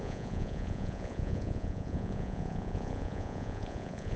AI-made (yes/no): yes